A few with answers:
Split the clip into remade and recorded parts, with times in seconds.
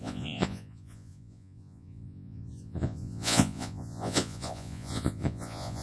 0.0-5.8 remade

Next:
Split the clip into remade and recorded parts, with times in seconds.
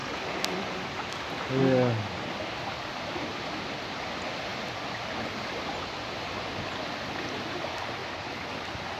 0.0-1.6 remade; 1.6-8.0 recorded; 8.0-9.0 remade